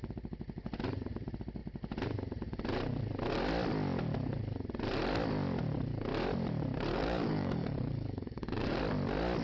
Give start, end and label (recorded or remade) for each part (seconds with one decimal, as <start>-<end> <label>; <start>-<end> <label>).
0.0-6.9 recorded; 6.9-8.8 remade; 8.8-9.4 recorded